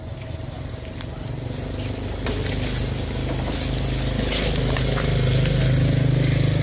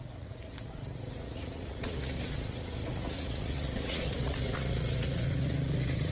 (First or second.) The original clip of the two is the first